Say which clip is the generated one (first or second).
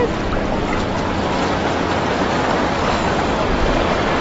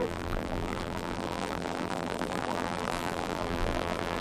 second